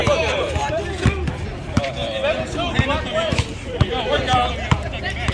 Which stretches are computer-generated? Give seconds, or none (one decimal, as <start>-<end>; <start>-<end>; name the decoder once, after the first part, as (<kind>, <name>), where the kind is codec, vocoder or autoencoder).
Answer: 0.0-2.2 (vocoder, BigVGAN v2); 3.1-3.8